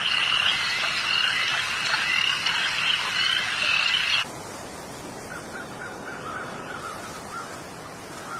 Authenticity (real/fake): real